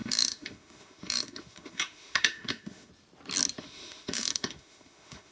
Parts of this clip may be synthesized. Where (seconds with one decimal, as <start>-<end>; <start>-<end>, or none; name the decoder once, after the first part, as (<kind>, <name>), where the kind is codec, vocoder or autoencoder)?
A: 0.0-2.9 (autoencoder, DAC-VAE); 3.6-5.3